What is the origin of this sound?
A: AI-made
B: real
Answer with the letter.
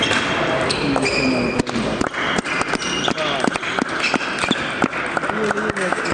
B